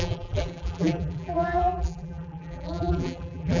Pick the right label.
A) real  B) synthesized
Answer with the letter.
B